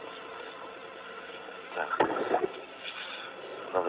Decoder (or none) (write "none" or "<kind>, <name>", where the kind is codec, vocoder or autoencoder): none